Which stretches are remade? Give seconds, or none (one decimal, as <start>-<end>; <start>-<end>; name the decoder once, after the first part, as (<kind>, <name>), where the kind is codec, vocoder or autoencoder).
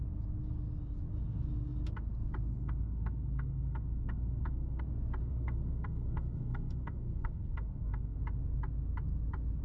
2.5-4.8 (codec, SNAC); 5.2-8.2